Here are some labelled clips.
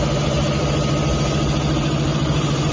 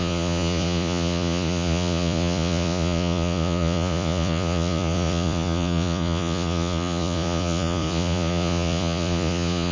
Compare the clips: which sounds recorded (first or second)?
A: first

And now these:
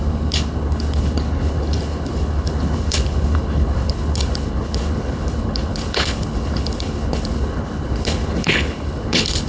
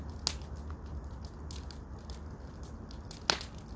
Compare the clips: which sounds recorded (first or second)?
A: second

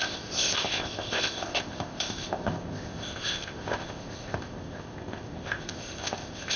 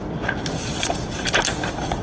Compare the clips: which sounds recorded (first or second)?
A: second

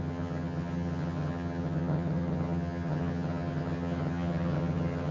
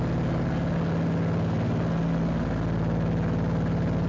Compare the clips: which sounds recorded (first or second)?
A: second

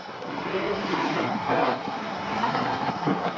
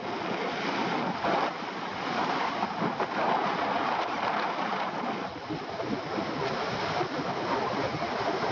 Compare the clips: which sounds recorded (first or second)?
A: second